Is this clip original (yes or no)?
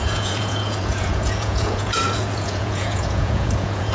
no